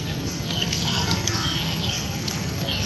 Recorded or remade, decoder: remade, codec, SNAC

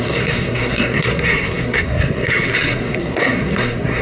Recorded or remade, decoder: remade, codec, SNAC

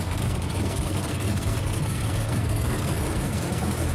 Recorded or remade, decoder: remade, codec, SNAC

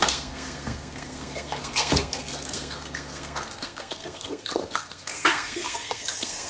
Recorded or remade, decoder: remade, codec, SNAC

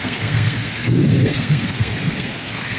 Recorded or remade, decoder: remade, codec, SNAC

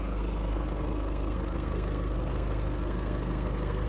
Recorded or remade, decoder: remade, codec, SNAC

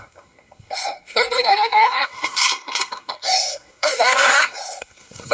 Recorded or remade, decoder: remade, codec, SNAC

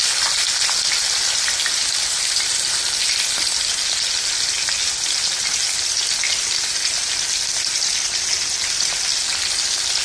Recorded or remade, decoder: recorded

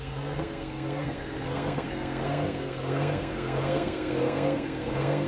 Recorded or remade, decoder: remade, codec, SNAC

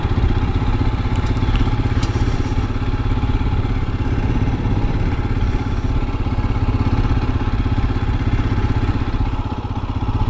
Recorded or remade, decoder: recorded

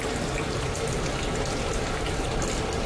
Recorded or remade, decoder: recorded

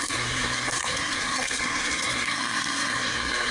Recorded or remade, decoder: remade, codec, SNAC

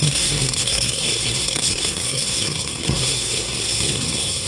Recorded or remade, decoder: remade, codec, SNAC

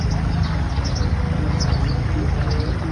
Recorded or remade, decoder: recorded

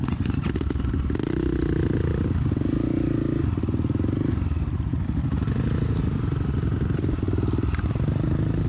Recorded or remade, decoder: recorded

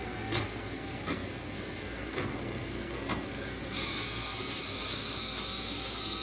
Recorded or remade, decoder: remade, codec, SNAC